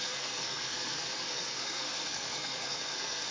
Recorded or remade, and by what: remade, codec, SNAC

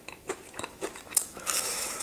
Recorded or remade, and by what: remade, autoencoder, DAC-VAE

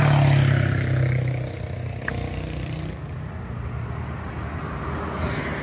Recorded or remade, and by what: recorded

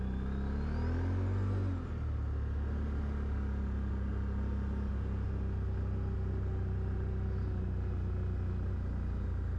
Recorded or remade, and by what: recorded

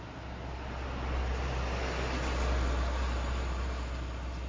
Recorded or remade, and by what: recorded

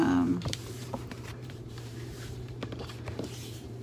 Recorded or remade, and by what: remade, vocoder, BigVGAN v2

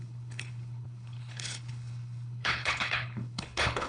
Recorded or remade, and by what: remade, codec, HILCodec